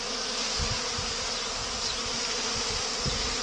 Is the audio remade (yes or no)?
no